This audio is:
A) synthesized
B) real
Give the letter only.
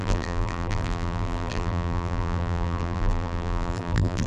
A